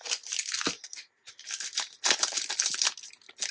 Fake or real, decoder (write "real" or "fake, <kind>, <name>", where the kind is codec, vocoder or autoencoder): real